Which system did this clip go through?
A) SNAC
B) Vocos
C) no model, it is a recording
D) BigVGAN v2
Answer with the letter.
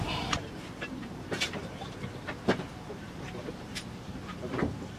D